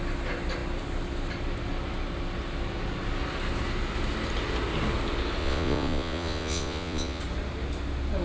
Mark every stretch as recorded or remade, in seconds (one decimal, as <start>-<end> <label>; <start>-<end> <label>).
0.0-5.4 recorded; 5.4-7.2 remade; 7.2-8.2 recorded